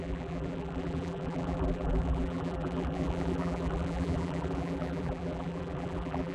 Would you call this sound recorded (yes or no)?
no